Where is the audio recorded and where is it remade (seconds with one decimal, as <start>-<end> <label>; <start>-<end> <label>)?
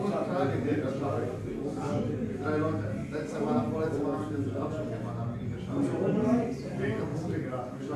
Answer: 0.0-0.7 recorded; 0.7-1.6 remade; 1.6-7.1 recorded; 7.1-8.0 remade